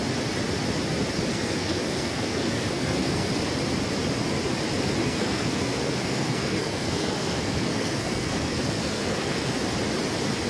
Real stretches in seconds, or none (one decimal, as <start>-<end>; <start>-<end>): 0.0-1.3; 3.3-5.0; 9.5-10.5